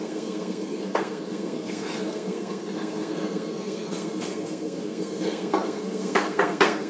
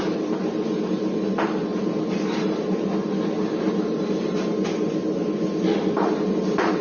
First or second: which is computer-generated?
first